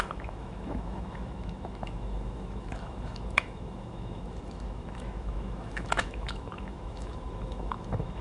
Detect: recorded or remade remade